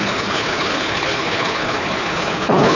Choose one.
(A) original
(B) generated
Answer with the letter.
B